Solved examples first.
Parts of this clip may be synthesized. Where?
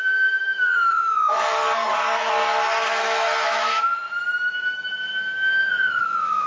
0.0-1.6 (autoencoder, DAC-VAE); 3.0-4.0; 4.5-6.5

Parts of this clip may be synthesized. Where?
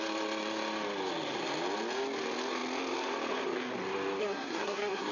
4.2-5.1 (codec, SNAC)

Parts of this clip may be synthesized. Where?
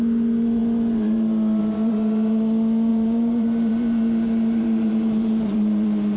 2.9-6.2 (vocoder, BigVGAN v2)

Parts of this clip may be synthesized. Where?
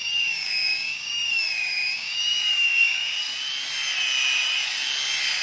0.0-3.2 (codec, DAC)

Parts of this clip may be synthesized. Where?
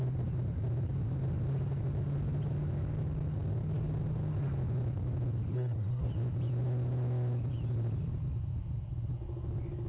5.5-6.1 (codec, SNAC)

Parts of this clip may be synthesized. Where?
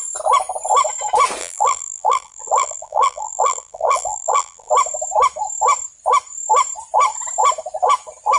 1.4-4.7 (vocoder, BigVGAN v2)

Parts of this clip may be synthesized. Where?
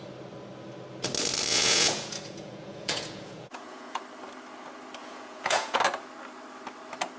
1.5-4.0 (vocoder, Vocos); 5.0-5.8